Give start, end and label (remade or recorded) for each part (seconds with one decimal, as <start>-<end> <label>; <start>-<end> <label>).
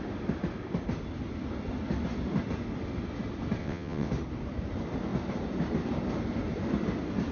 0.0-3.6 recorded; 3.6-4.1 remade; 4.1-7.3 recorded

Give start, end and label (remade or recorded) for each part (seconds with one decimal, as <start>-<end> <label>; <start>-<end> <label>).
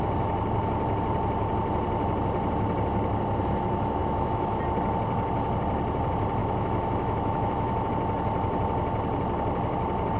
0.0-4.0 recorded; 4.0-4.6 remade; 4.6-6.4 recorded; 6.4-7.9 remade; 7.9-10.2 recorded